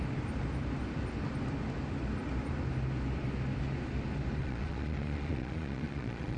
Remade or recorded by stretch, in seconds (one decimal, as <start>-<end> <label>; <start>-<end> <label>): 0.0-4.4 recorded; 4.4-6.4 remade